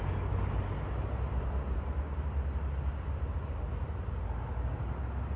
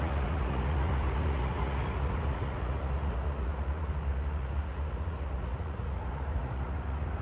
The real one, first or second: first